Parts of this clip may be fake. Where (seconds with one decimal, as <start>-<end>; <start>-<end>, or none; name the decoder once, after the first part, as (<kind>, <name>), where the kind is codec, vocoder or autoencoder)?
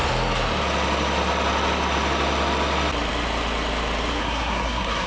4.2-5.1 (codec, SNAC)